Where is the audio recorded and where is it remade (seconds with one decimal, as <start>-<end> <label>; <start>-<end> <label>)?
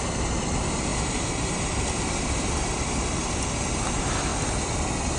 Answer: 0.0-5.2 recorded